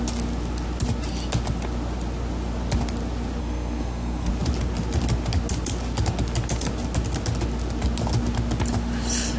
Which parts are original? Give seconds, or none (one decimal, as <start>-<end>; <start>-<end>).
0.0-3.4; 4.3-9.4